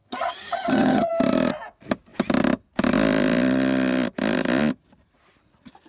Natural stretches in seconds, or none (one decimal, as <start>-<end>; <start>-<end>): 1.1-5.9